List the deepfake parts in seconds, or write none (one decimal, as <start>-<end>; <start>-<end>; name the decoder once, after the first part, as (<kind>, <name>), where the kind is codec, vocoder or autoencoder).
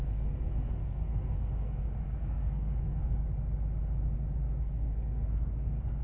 0.0-3.2 (codec, SNAC); 4.6-6.0